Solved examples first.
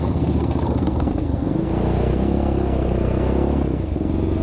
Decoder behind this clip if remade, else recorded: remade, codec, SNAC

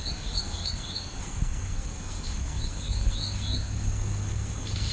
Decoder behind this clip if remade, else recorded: remade, codec, SNAC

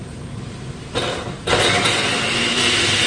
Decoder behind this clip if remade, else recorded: recorded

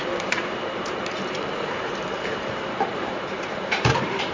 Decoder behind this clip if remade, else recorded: remade, vocoder, BigVGAN v2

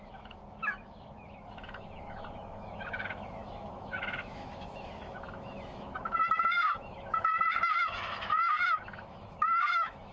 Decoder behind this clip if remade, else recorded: remade, autoencoder, DAC-VAE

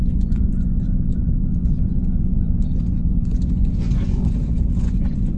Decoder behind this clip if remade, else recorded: remade, vocoder, Vocos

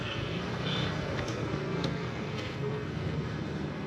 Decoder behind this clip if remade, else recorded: remade, codec, SNAC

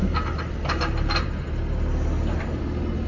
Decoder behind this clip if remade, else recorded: recorded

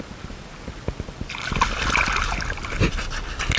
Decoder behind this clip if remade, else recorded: recorded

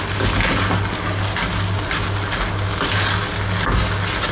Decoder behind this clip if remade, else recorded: recorded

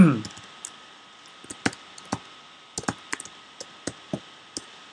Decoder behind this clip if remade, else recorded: recorded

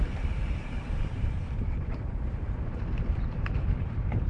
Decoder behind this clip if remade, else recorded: remade, vocoder, BigVGAN v2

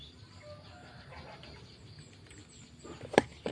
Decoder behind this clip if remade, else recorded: recorded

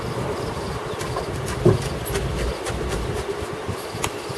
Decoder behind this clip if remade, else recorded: recorded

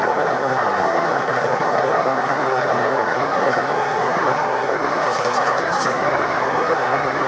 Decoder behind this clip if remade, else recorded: remade, codec, SNAC